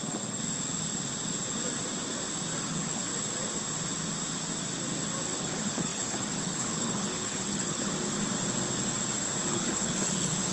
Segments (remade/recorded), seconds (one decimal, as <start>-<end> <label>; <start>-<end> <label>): 0.0-2.7 recorded; 2.7-3.1 remade; 3.1-5.4 recorded; 5.4-7.9 remade; 7.9-9.5 recorded; 9.5-10.5 remade